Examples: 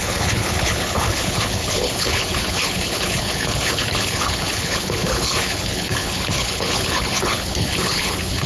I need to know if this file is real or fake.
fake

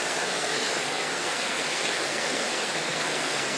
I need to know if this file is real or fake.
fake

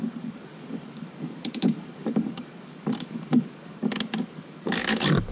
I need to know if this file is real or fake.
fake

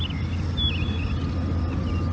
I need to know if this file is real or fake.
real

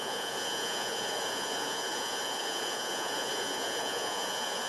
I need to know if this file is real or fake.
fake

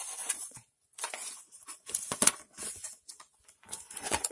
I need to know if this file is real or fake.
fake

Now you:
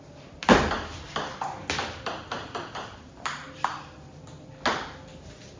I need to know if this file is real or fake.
real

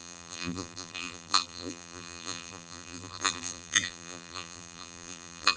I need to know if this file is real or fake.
fake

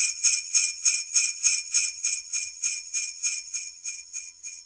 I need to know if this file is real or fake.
fake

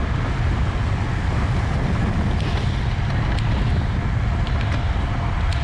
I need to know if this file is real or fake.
real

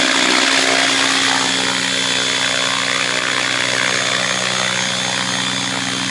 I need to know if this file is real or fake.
real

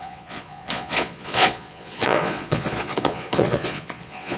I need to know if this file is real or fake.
fake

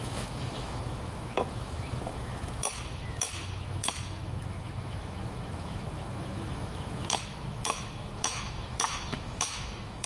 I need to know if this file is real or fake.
fake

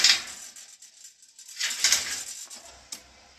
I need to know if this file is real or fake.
real